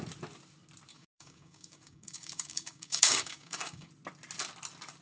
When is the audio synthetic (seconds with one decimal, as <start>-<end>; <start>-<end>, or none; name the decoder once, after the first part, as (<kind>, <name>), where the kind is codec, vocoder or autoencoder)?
0.9-3.9 (codec, DAC)